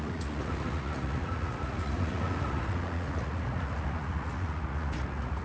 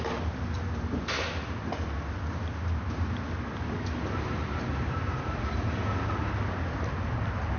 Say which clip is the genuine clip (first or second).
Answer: second